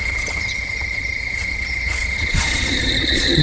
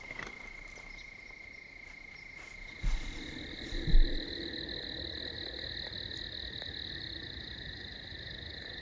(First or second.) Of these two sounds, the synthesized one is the first